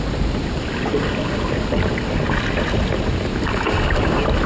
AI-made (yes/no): no